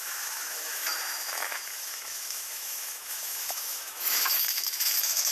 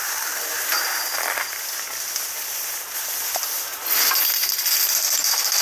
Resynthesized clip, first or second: first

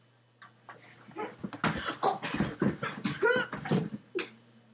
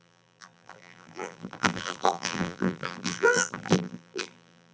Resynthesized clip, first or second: second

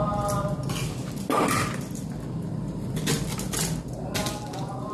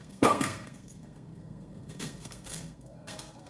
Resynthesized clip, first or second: second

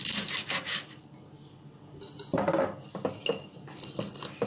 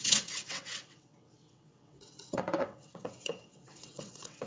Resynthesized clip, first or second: second